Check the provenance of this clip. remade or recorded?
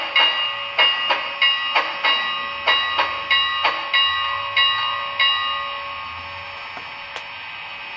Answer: recorded